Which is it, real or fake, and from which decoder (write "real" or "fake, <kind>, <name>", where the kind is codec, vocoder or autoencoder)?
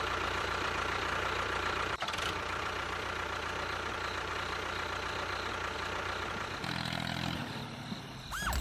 fake, vocoder, BigVGAN v2